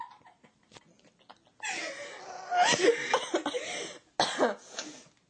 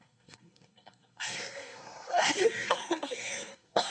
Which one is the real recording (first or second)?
first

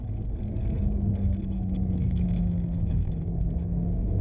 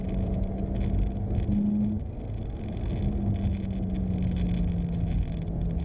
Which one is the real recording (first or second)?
second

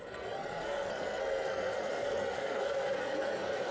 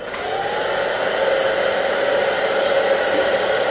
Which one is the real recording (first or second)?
second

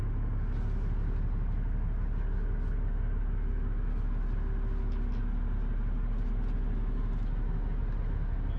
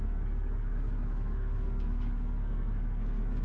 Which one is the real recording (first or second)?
first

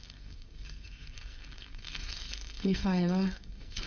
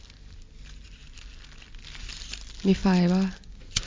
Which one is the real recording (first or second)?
second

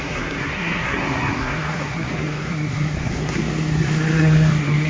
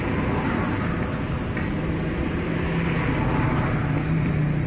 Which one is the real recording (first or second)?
second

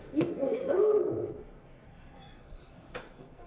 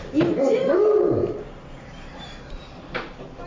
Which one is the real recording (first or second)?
second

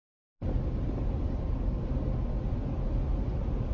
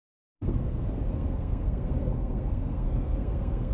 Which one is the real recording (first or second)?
first